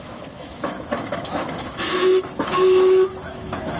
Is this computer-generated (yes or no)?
yes